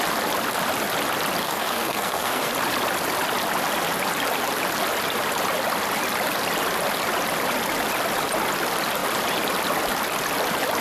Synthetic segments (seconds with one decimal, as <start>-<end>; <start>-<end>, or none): 1.4-2.5